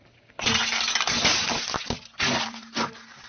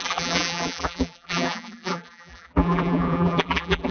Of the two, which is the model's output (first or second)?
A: second